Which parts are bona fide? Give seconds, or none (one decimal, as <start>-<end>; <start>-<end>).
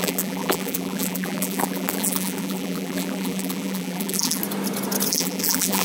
4.4-5.1